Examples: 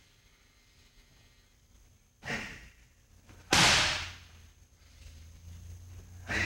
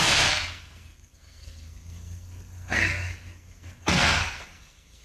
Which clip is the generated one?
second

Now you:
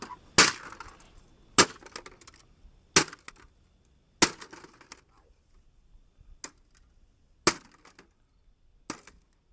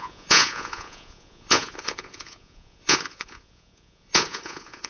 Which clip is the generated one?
second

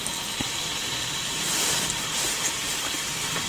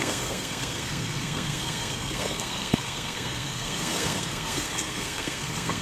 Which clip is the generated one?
second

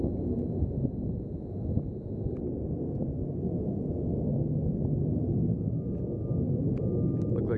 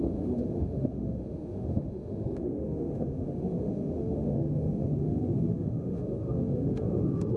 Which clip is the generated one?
second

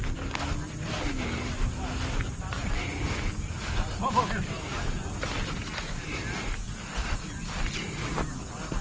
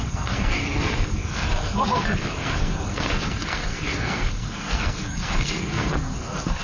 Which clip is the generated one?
second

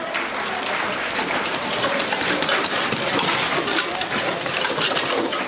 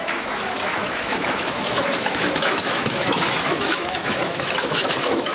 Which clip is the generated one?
second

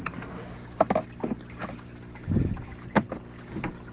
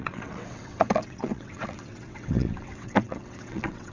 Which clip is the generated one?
second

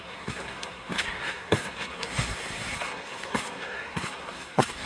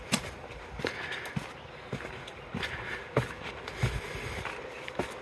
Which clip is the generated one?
first